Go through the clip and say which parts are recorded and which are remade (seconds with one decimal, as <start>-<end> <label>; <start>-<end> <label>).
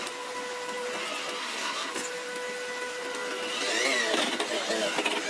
0.0-1.4 recorded; 1.4-1.9 remade; 1.9-5.3 recorded